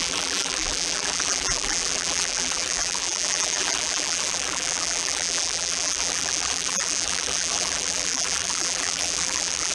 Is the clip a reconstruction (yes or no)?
yes